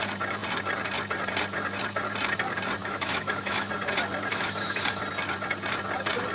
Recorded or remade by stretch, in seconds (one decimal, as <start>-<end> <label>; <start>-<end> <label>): 0.0-2.8 recorded; 2.8-3.7 remade; 3.7-4.3 recorded; 4.3-5.0 remade; 5.0-6.3 recorded